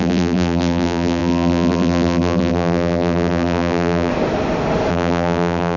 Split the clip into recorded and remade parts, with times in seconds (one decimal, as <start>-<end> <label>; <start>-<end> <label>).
0.0-4.1 remade; 4.1-4.9 recorded; 4.9-5.8 remade